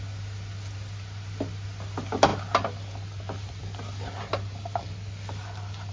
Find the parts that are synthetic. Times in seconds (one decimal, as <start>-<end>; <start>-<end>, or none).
none